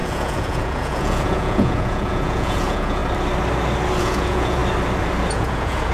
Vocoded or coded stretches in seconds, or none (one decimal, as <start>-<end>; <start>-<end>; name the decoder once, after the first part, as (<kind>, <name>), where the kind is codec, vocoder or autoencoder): 0.0-3.0 (vocoder, Vocos); 4.0-4.6; 5.3-5.9